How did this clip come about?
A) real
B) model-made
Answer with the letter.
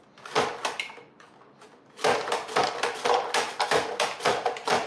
A